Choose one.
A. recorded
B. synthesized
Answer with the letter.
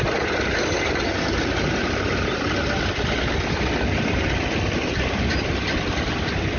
A